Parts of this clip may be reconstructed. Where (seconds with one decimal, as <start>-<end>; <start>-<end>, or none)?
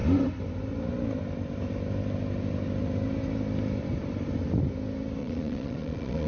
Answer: 5.2-6.3